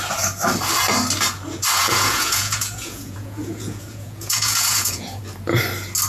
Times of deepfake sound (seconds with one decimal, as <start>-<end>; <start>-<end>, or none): 1.8-5.2